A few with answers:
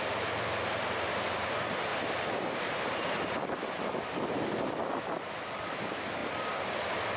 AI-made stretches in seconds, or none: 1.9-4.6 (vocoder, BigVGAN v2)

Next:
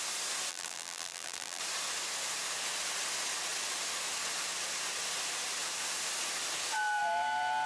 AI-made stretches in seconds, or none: 0.5-1.6 (vocoder, BigVGAN v2)

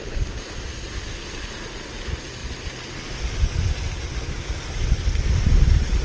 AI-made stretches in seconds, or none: 0.0-1.5 (vocoder, BigVGAN v2)

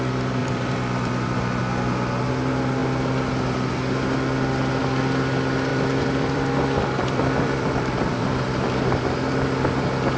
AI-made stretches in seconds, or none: 0.4-1.6 (vocoder, BigVGAN v2); 5.7-9.0

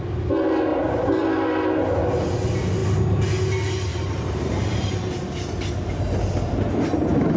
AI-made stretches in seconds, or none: 0.7-2.3 (vocoder, BigVGAN v2); 3.9-4.9